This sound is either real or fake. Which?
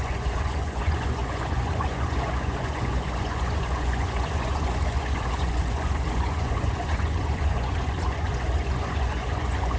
fake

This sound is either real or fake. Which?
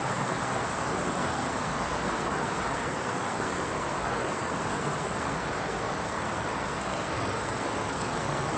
fake